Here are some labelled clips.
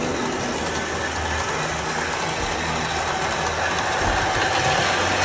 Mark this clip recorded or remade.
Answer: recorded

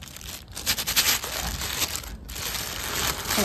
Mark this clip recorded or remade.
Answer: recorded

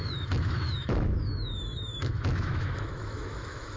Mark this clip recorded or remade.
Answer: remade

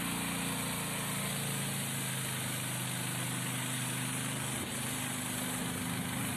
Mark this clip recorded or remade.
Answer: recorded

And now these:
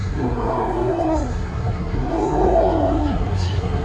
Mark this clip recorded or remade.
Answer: remade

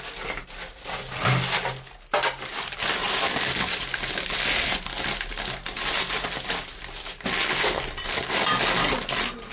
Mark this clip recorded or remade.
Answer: recorded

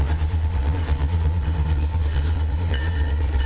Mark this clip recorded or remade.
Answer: remade